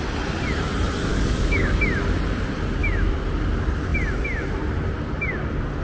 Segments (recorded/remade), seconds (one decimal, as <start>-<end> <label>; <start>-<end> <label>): 0.0-1.1 recorded; 1.1-1.8 remade; 1.8-5.8 recorded